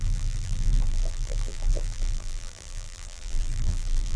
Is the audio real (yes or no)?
no